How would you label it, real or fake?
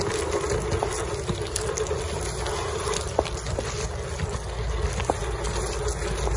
real